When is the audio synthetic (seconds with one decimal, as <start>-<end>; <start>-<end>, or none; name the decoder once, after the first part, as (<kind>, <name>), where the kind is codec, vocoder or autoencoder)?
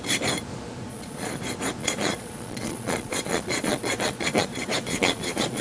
0.9-1.4 (vocoder, Vocos); 1.8-5.6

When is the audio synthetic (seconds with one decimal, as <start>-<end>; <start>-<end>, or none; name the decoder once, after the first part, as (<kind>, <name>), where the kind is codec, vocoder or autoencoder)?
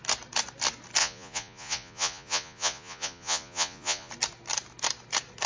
1.0-4.1 (vocoder, Vocos)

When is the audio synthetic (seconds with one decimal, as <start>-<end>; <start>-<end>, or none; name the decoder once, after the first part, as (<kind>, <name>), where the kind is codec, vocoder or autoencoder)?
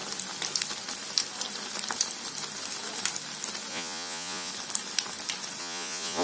3.7-4.5 (vocoder, Vocos); 5.6-6.2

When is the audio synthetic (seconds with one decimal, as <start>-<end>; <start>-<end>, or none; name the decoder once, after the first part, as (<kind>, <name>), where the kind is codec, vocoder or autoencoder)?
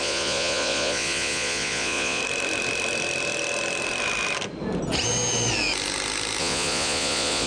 0.0-2.2 (vocoder, Vocos); 6.4-7.5